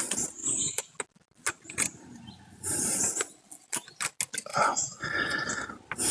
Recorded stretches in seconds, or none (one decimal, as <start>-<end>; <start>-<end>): 0.0-4.5; 5.6-6.1